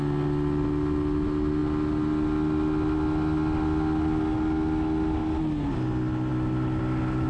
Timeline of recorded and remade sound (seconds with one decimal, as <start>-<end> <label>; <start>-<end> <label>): 0.0-7.3 recorded

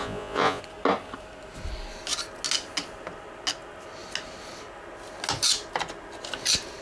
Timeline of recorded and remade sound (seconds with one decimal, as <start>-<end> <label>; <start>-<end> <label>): 0.0-0.6 remade; 0.6-6.8 recorded

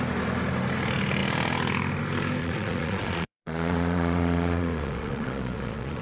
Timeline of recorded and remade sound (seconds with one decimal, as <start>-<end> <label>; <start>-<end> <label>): 0.0-2.4 recorded; 2.4-6.0 remade

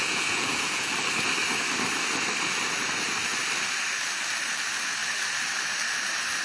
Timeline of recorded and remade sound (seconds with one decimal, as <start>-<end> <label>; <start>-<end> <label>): 0.0-0.9 remade; 0.9-6.4 recorded

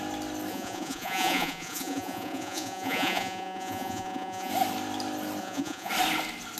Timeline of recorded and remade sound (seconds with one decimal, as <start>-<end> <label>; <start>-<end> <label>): 0.0-0.5 recorded; 0.5-4.5 remade; 4.5-5.4 recorded; 5.4-5.9 remade; 5.9-6.6 recorded

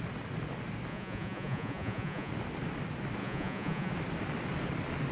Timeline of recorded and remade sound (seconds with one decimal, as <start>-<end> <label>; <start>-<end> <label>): 0.0-0.9 recorded; 0.9-2.3 remade; 2.3-3.2 recorded; 3.2-3.9 remade; 3.9-5.1 recorded